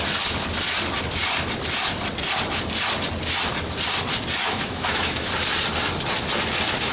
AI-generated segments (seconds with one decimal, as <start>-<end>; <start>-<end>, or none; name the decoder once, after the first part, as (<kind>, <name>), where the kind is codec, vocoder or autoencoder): 4.4-5.3 (autoencoder, DAC-VAE)

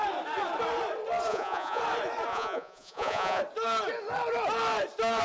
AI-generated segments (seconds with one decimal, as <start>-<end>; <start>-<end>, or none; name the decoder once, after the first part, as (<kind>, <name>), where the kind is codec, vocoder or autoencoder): 1.3-1.8 (vocoder, Vocos); 2.3-3.4